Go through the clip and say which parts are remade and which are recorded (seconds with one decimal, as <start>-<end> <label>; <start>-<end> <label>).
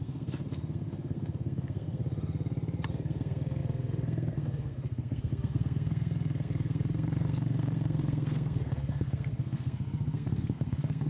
0.0-2.0 remade; 2.0-2.9 recorded; 2.9-11.1 remade